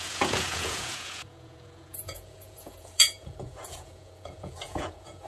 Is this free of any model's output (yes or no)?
no